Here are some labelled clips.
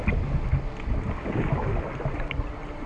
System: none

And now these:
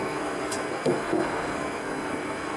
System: codec, SNAC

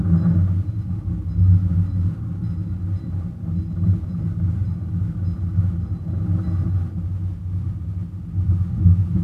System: none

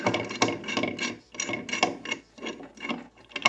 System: none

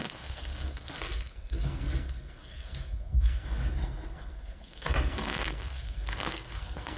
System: codec, SNAC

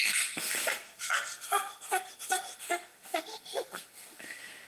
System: codec, SNAC